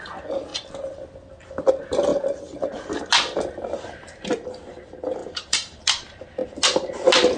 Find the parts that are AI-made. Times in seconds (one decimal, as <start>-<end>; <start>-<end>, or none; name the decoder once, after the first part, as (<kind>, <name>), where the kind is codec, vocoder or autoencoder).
2.1-3.0 (vocoder, BigVGAN v2); 5.2-5.8